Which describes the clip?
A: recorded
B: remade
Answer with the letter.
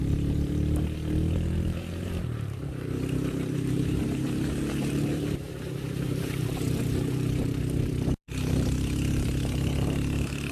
B